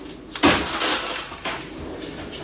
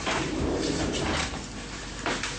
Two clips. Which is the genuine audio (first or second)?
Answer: first